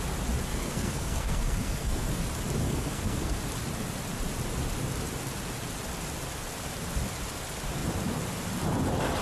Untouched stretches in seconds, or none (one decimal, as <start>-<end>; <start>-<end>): 0.0-0.5; 2.2-2.6; 3.4-9.2